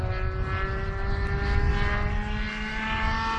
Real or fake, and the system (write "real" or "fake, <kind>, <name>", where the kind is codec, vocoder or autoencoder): real